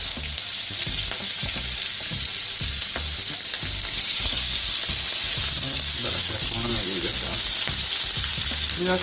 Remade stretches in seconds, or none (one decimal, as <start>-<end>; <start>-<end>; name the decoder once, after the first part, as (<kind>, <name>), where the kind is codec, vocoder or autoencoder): none